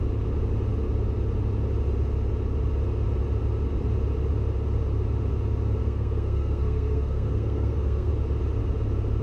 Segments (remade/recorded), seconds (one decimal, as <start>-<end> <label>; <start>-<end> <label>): 0.0-5.8 recorded; 5.8-8.1 remade; 8.1-9.2 recorded